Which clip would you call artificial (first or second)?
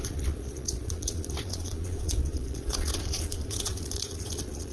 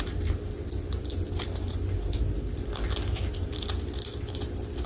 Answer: first